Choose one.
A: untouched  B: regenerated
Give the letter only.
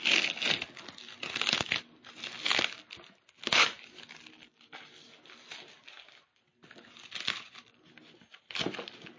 A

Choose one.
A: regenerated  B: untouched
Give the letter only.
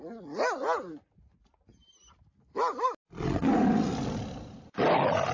B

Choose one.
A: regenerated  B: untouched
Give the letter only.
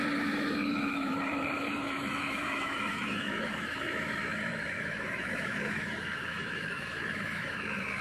A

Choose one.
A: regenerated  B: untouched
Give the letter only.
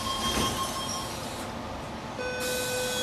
B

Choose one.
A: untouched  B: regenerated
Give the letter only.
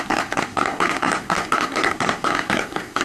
B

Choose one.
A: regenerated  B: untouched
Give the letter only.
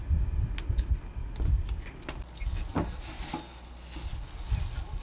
B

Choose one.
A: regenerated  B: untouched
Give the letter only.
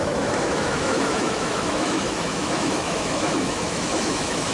A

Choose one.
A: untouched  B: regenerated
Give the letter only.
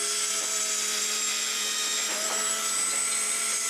B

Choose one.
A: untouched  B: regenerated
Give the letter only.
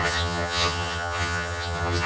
B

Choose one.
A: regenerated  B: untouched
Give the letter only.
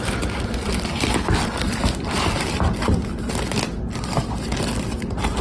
B